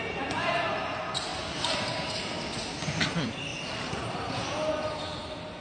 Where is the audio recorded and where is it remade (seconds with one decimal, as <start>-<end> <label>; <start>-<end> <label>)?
0.0-3.5 remade; 3.5-4.7 recorded; 4.7-5.6 remade